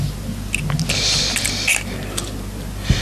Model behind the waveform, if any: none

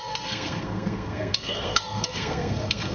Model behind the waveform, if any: codec, SNAC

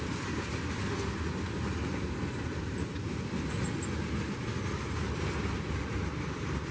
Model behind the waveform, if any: none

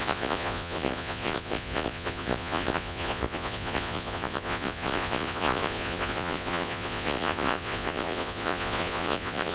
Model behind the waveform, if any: vocoder, Vocos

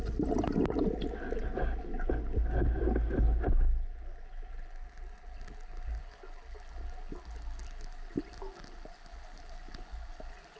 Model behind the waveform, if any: none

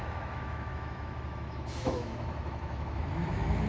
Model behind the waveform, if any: autoencoder, DAC-VAE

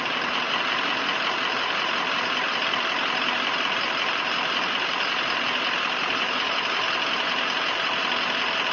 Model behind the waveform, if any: none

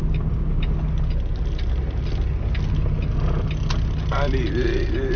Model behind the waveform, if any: none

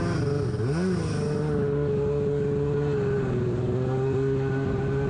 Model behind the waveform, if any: none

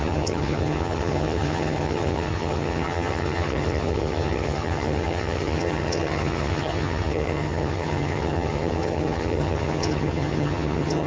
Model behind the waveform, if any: vocoder, HiFi-GAN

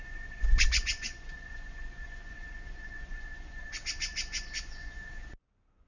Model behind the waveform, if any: vocoder, Vocos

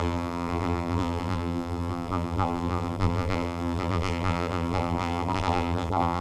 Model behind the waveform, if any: vocoder, BigVGAN v2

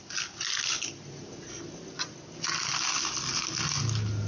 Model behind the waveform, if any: none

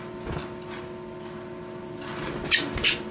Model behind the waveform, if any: none